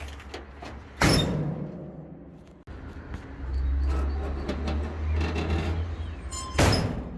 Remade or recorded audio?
recorded